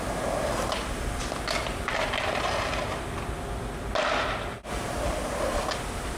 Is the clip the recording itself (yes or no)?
yes